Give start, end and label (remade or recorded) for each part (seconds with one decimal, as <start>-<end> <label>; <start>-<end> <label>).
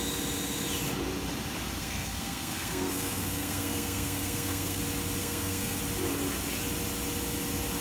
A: 0.0-1.8 recorded; 1.8-4.8 remade; 4.8-5.2 recorded; 5.2-5.8 remade; 5.8-7.8 recorded